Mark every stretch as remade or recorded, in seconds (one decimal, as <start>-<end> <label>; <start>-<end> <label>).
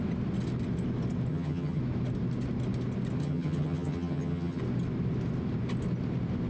0.0-1.3 recorded; 1.3-1.8 remade; 1.8-3.2 recorded; 3.2-4.6 remade; 4.6-6.5 recorded